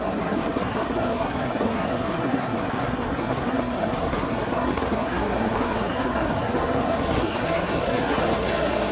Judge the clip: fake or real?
fake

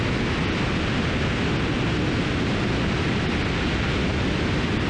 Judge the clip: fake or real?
real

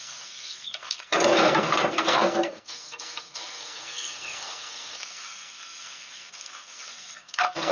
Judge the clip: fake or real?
fake